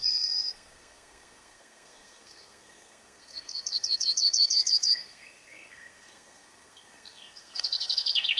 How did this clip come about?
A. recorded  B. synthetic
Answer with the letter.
B